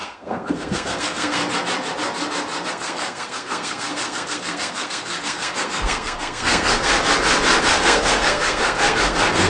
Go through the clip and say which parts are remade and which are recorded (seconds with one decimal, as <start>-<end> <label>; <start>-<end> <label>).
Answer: 0.0-1.4 remade; 1.4-2.7 recorded; 2.7-6.9 remade; 6.9-7.6 recorded; 7.6-9.5 remade